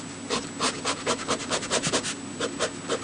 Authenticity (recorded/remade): recorded